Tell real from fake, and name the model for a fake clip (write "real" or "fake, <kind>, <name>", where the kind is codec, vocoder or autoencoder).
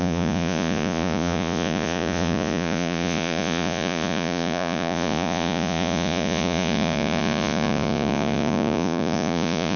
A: fake, vocoder, Vocos